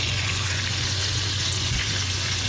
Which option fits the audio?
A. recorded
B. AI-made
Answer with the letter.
B